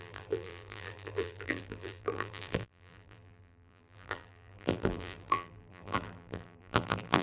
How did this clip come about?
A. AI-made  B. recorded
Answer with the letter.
A